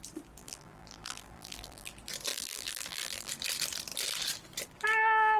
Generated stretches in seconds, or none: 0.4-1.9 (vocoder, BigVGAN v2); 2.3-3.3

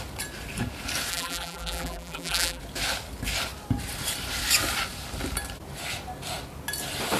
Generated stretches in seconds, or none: 1.1-2.6 (vocoder, BigVGAN v2)

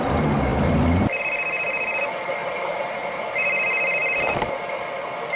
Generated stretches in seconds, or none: 2.4-3.2 (vocoder, BigVGAN v2)

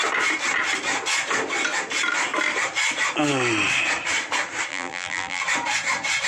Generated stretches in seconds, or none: 4.7-5.4 (vocoder, BigVGAN v2)

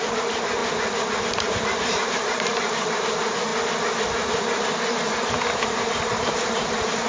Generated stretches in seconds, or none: 0.0-0.6 (vocoder, BigVGAN v2); 1.2-3.5; 5.0-7.1